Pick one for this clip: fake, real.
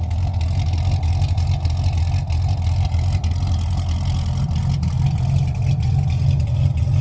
real